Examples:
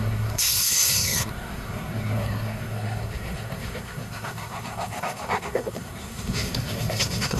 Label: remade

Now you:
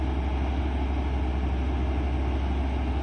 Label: recorded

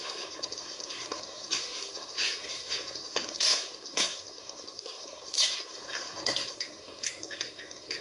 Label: remade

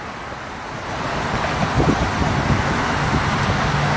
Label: recorded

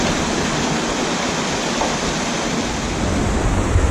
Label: remade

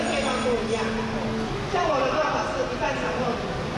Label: recorded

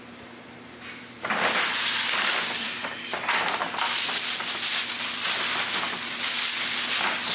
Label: recorded